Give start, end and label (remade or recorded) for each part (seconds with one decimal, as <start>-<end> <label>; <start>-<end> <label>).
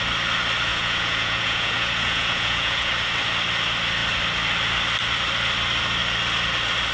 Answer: 0.0-0.7 recorded; 0.7-2.9 remade; 2.9-6.9 recorded